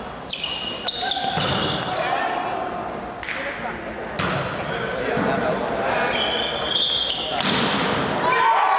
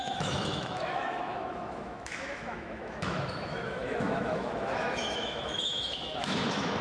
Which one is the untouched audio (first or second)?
first